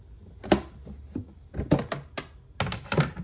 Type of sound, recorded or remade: recorded